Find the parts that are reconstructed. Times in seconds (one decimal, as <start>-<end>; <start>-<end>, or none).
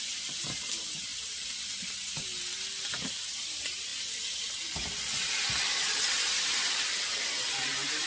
0.0-2.3; 2.9-3.9; 6.7-8.1